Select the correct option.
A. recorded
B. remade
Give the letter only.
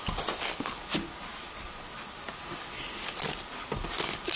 A